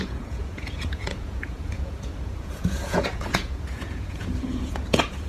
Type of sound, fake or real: fake